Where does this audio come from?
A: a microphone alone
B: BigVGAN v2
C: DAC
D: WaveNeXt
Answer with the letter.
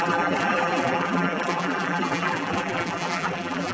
B